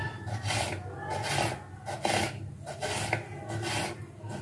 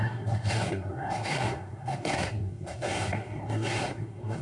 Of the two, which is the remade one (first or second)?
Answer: second